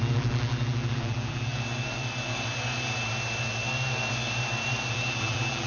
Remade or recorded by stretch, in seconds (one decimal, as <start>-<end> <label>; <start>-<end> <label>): 0.0-1.5 remade; 1.5-4.9 recorded; 4.9-5.7 remade